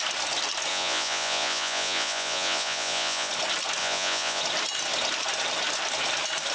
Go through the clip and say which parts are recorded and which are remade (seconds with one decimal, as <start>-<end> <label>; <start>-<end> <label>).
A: 0.0-0.7 recorded; 0.7-3.3 remade; 3.3-3.8 recorded; 3.8-4.4 remade; 4.4-6.5 recorded